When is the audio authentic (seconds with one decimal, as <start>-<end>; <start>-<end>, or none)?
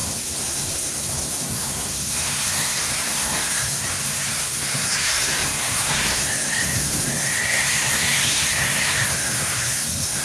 none